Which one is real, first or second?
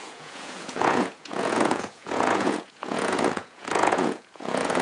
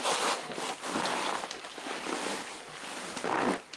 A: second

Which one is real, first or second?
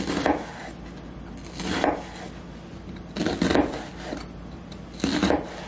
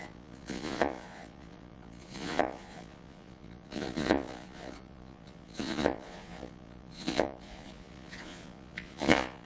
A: first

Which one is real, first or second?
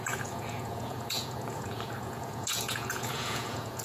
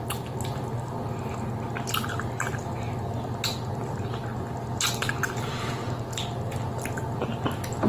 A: second